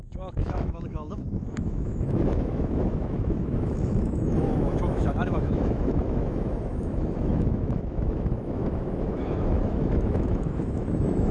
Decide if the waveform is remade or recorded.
remade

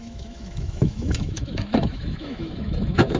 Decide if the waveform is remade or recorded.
remade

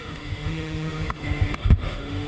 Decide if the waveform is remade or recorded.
remade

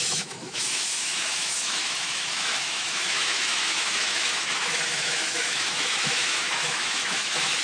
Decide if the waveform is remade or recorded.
remade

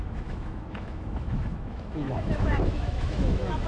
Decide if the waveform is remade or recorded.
remade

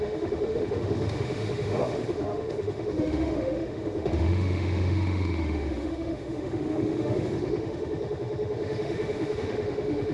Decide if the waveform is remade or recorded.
remade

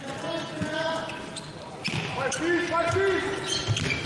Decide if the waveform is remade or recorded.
recorded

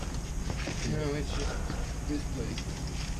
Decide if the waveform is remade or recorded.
recorded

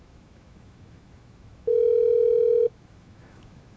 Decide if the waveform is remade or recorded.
remade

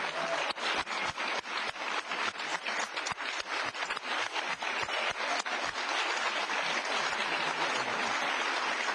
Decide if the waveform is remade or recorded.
recorded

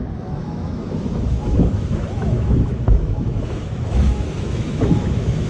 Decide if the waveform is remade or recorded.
remade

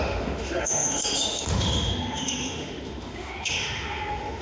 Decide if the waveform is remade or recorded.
remade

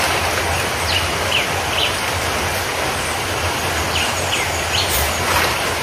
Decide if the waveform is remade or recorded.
recorded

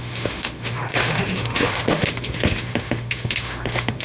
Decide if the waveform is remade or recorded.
remade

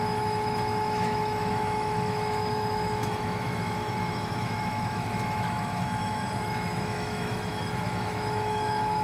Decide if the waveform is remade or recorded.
remade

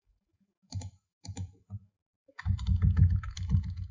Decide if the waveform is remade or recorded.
remade